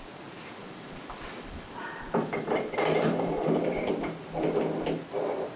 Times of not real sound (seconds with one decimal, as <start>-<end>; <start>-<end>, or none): 0.6-3.9

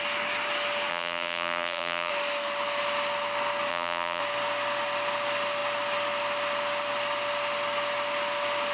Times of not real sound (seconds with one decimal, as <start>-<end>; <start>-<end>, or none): 0.9-2.1; 3.7-4.2